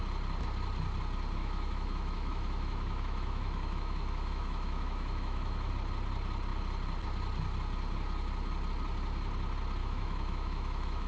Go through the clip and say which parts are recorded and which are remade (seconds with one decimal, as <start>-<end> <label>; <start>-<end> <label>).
0.0-1.4 recorded; 1.4-5.7 remade; 5.7-9.8 recorded; 9.8-11.1 remade